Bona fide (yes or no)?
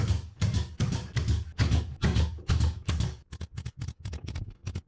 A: no